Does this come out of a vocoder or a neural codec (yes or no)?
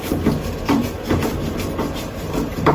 yes